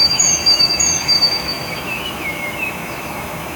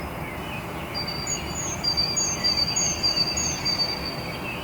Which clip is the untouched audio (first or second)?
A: second